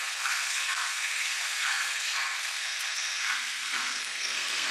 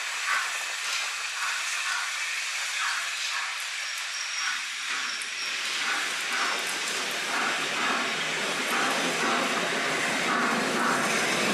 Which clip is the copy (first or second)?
first